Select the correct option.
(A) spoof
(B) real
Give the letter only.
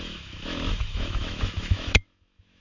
A